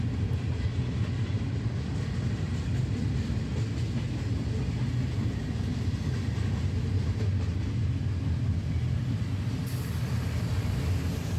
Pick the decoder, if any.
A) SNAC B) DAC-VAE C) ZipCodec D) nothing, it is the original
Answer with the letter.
D